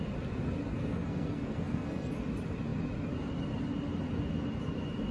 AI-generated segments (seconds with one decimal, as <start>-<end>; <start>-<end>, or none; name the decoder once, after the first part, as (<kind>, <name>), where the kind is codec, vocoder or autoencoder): 0.7-2.2 (codec, SNAC)